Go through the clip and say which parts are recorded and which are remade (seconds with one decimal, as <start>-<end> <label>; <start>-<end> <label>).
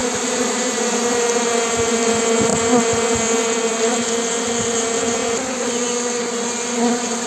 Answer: 0.0-1.3 remade; 1.3-5.2 recorded; 5.2-5.8 remade; 5.8-7.3 recorded